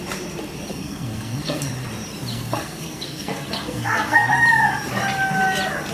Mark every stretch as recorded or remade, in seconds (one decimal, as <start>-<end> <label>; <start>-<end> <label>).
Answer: 0.0-0.7 recorded; 0.7-1.7 remade; 1.7-2.3 recorded; 2.3-4.3 remade; 4.3-5.9 recorded